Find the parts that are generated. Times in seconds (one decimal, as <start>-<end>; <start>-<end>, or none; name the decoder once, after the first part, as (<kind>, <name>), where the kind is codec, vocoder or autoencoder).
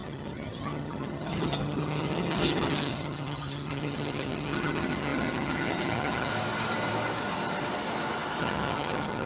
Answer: 0.0-6.3 (vocoder, HiFi-GAN); 8.4-9.3